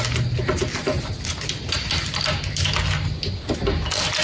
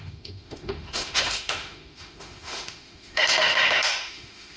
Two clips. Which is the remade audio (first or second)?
second